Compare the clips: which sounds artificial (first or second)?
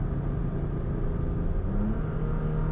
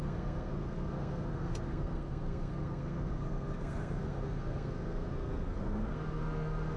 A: second